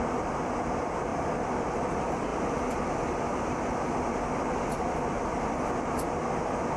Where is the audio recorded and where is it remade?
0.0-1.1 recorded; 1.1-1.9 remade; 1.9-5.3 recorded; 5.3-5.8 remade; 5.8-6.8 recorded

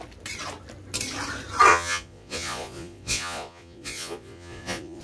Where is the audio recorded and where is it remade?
0.0-1.7 recorded; 1.7-5.0 remade

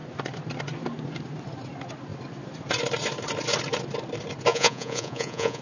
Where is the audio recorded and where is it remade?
0.0-4.5 recorded; 4.5-5.6 remade

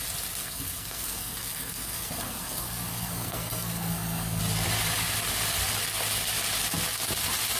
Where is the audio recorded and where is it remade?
0.0-0.4 recorded; 0.4-4.4 remade; 4.4-7.6 recorded

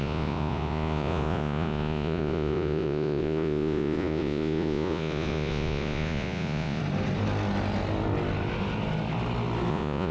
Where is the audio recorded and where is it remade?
0.0-6.8 remade; 6.8-9.7 recorded; 9.7-10.1 remade